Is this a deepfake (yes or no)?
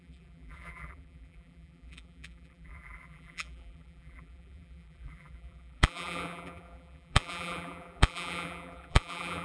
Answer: yes